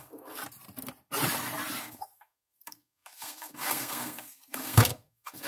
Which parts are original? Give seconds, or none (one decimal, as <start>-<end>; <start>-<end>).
0.4-1.8